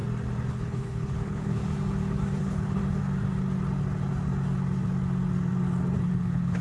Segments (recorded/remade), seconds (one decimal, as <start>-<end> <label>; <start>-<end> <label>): 0.0-0.5 recorded; 0.5-1.6 remade; 1.6-2.4 recorded; 2.4-2.8 remade; 2.8-6.0 recorded; 6.0-6.6 remade